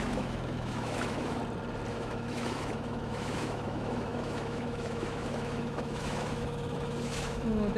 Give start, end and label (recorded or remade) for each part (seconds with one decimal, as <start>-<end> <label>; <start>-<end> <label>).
0.0-1.4 remade; 1.4-1.9 recorded; 1.9-7.8 remade